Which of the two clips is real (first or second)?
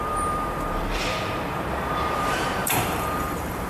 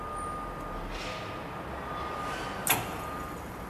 second